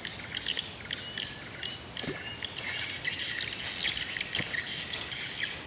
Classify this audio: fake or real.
real